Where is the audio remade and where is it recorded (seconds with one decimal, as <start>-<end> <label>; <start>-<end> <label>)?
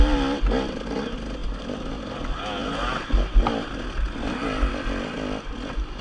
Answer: 0.0-6.0 recorded